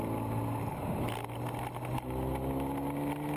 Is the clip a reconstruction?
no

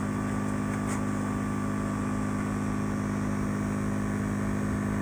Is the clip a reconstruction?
no